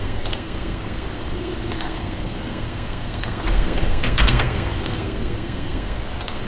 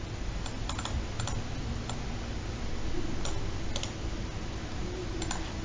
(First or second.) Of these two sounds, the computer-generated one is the first